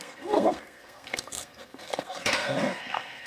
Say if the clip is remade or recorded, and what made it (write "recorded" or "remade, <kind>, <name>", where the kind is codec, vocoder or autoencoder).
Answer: remade, codec, SNAC